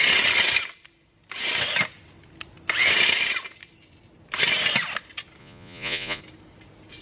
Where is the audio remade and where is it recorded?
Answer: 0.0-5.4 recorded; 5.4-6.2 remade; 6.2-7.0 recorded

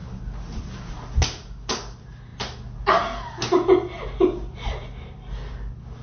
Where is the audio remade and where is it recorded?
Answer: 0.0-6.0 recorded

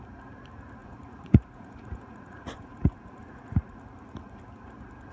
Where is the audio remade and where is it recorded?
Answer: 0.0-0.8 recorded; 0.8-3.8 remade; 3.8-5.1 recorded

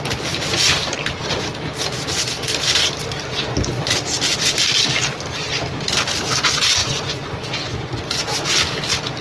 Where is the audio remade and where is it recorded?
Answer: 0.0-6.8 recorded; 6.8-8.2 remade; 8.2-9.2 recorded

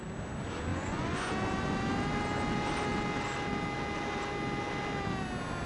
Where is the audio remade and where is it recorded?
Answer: 0.0-0.7 recorded; 0.7-1.3 remade; 1.3-5.7 recorded